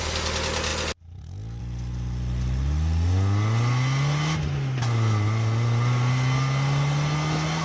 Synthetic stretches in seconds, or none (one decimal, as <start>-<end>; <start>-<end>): none